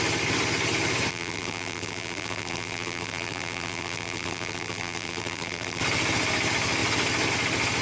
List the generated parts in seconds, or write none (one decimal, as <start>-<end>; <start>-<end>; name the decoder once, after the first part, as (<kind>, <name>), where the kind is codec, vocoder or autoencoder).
1.1-5.8 (vocoder, BigVGAN v2)